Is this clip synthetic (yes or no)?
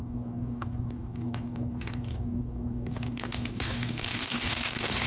yes